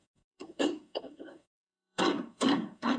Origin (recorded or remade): remade